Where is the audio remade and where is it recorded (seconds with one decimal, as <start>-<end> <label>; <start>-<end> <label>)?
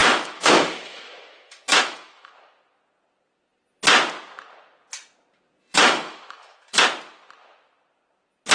0.0-2.3 remade; 2.3-5.6 recorded; 5.6-6.8 remade; 6.8-8.5 recorded